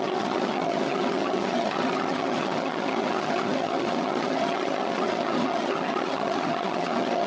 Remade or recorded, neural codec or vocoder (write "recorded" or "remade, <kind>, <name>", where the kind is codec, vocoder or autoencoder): remade, vocoder, HiFi-GAN